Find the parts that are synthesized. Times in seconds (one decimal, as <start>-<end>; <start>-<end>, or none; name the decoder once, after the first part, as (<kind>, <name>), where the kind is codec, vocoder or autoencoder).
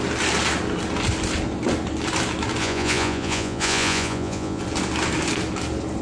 2.6-4.6 (vocoder, Vocos)